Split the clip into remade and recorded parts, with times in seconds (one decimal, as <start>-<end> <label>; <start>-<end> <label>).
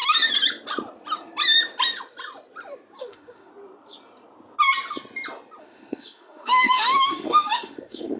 0.0-3.0 recorded; 3.0-3.5 remade; 3.5-5.6 recorded; 5.6-8.2 remade